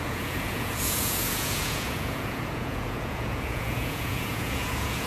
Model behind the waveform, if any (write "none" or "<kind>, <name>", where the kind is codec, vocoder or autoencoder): vocoder, Vocos